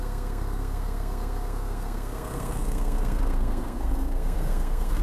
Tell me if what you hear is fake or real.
fake